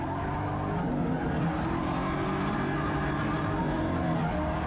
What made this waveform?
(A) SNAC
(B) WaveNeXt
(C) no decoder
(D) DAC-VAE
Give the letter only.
C